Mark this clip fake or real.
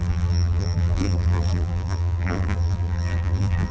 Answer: fake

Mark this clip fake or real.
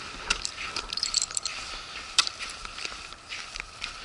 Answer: fake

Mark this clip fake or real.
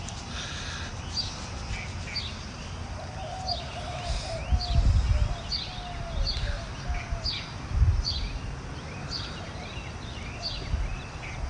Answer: real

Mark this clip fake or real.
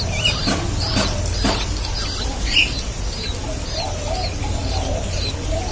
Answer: real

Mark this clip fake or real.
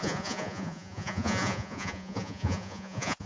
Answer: fake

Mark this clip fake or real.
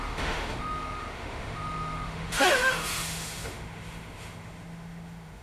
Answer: fake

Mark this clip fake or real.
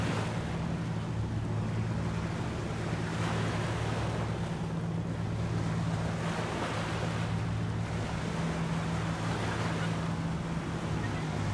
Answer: real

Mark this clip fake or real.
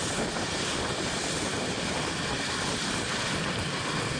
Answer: fake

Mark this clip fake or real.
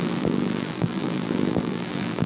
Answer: fake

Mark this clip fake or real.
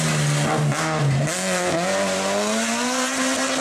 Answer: real